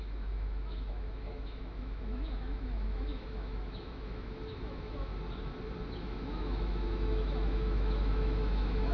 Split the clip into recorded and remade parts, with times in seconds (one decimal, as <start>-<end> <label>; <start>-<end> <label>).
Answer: 0.0-5.1 remade; 5.1-6.0 recorded; 6.0-8.9 remade